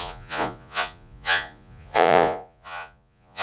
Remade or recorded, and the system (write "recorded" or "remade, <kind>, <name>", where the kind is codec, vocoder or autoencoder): remade, vocoder, Vocos